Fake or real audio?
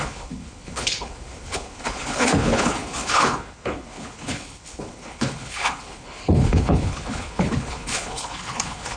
fake